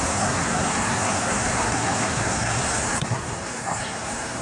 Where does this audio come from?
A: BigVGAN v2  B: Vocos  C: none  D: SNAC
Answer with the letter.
D